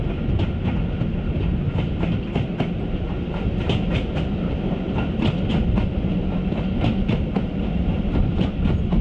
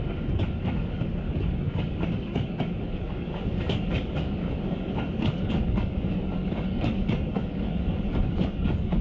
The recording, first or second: first